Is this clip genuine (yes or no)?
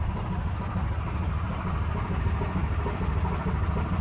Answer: yes